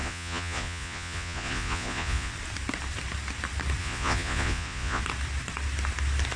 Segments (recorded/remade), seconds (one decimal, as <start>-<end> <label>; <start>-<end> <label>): 0.0-2.3 remade; 2.3-3.8 recorded; 3.8-5.0 remade; 5.0-6.4 recorded